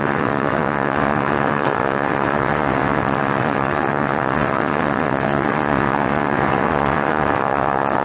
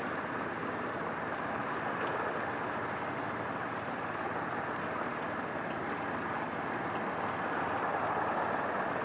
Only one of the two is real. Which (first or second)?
second